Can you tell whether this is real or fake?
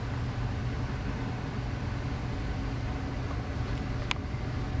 real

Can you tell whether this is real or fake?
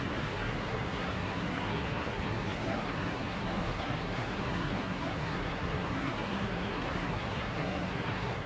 fake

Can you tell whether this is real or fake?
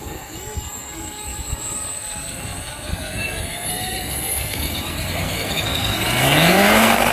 fake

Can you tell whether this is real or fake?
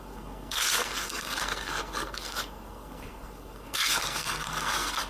fake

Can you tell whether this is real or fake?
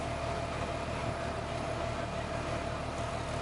real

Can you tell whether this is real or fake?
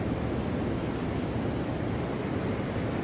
real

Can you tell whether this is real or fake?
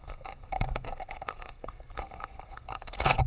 fake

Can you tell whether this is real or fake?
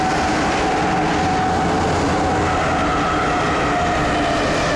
real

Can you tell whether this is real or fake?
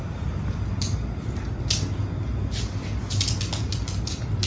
real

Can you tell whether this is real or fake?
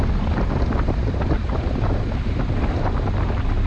real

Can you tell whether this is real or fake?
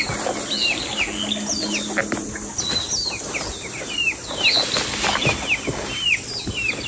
real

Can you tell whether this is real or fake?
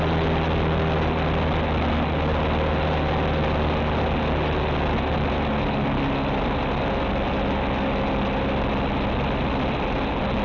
real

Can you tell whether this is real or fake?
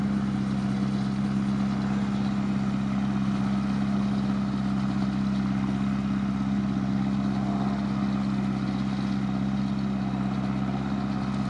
real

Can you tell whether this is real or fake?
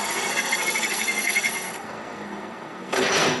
fake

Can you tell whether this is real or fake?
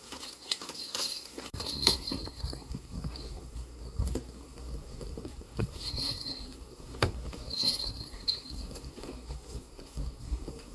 fake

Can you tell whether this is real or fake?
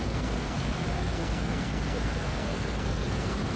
fake